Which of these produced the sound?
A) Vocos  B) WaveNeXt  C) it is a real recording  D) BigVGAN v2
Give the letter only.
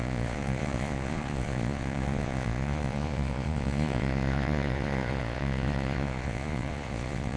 A